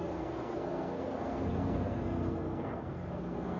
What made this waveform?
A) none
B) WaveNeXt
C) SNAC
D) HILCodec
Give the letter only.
C